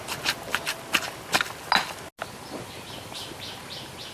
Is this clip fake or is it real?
real